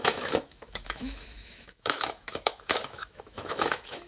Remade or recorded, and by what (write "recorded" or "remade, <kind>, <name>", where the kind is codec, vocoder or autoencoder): remade, autoencoder, DAC-VAE